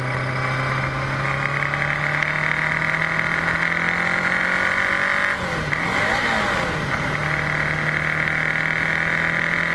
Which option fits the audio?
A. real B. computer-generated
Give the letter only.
A